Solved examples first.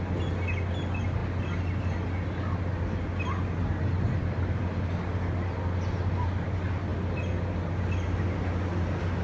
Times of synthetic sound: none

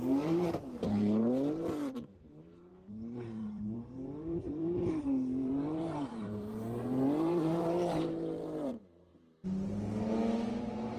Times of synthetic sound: 0.0-9.1 (vocoder, BigVGAN v2); 10.6-11.0

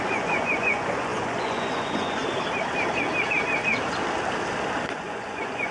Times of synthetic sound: 0.0-2.2 (vocoder, Vocos); 4.9-5.7

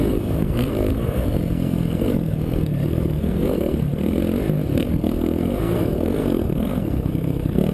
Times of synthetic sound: 0.0-4.2 (codec, SNAC); 4.8-7.7

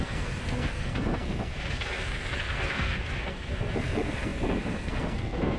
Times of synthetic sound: 0.0-5.6 (codec, SNAC)

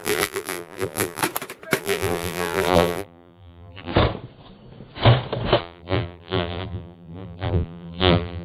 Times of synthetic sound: 0.0-1.2 (vocoder, BigVGAN v2); 1.8-3.9; 5.6-8.4